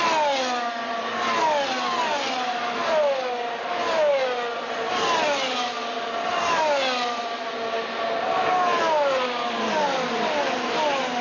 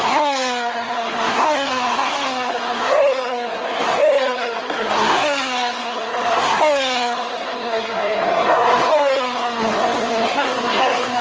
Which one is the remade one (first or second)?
second